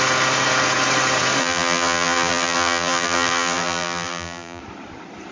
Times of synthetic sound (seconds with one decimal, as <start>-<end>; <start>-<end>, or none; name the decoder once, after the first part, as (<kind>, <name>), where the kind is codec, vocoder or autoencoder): 1.4-4.6 (vocoder, BigVGAN v2)